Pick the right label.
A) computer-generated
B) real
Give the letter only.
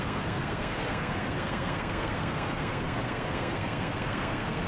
A